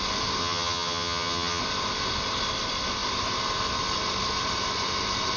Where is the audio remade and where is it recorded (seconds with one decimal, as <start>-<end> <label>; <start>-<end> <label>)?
0.0-0.4 recorded; 0.4-1.6 remade; 1.6-5.4 recorded